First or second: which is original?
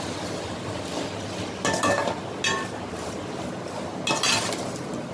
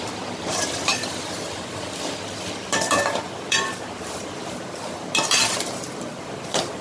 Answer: first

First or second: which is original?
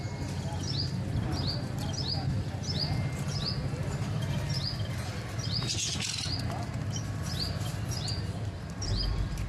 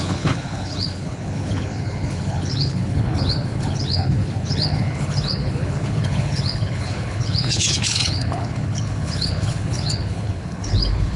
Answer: first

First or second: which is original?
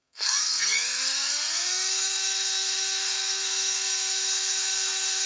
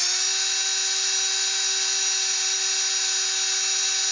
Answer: second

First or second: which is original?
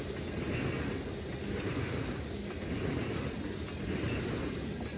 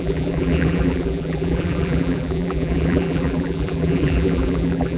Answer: first